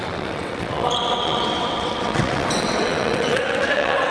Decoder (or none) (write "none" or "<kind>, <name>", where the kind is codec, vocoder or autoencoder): vocoder, WaveNeXt